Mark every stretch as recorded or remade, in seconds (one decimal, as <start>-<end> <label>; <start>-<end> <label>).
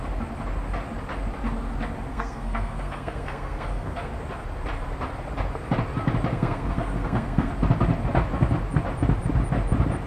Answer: 0.0-2.1 recorded; 2.1-4.1 remade; 4.1-6.3 recorded; 6.3-7.5 remade; 7.5-10.1 recorded